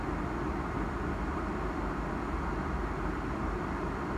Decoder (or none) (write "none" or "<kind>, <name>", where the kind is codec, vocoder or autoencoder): none